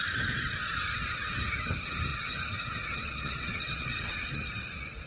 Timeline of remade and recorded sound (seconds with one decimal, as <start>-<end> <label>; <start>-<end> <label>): 0.0-2.1 recorded; 2.1-4.5 remade; 4.5-5.1 recorded